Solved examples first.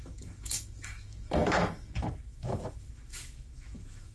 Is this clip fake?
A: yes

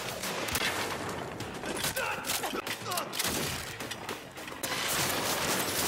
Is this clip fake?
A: no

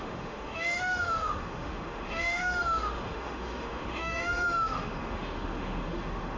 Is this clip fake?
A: yes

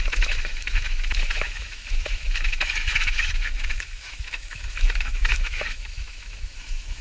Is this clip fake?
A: yes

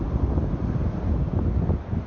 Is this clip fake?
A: no